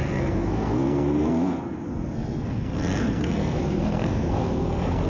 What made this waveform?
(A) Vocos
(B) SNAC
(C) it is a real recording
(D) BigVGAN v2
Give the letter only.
B